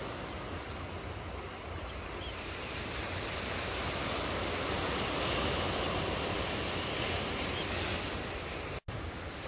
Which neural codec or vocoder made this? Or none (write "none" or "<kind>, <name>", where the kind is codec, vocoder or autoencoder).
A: none